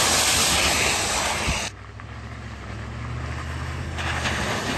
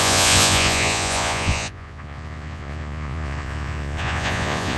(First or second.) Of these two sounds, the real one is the first